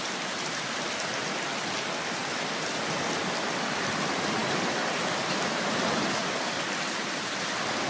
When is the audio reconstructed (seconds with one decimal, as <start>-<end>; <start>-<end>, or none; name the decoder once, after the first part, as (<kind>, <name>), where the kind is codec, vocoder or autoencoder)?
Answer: 4.4-5.8 (vocoder, BigVGAN v2)